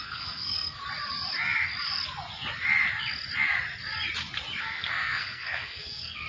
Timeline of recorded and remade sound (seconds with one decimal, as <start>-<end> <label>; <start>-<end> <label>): 0.0-0.8 remade; 0.8-4.6 recorded; 4.6-6.3 remade